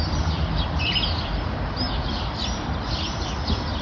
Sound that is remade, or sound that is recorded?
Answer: remade